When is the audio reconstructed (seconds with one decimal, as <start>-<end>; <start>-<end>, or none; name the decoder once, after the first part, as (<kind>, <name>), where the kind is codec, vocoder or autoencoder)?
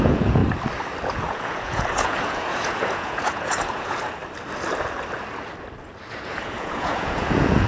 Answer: 0.0-0.4 (vocoder, Vocos); 1.1-4.2; 6.1-7.7